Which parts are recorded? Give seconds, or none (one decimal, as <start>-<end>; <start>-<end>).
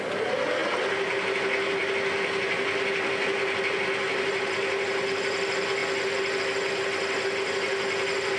0.0-8.4